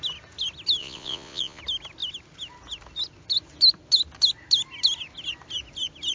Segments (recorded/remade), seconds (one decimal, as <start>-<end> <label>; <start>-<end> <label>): 0.0-0.8 recorded; 0.8-1.6 remade; 1.6-6.1 recorded

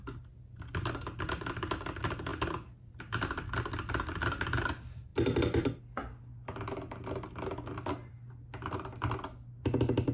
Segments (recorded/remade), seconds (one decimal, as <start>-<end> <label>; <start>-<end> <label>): 0.0-10.1 recorded

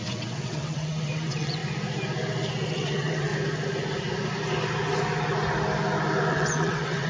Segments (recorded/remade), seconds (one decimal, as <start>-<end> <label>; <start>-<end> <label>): 0.0-1.6 remade; 1.6-2.7 recorded; 2.7-3.3 remade; 3.3-6.3 recorded; 6.3-7.1 remade